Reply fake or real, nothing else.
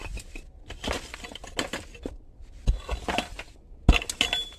real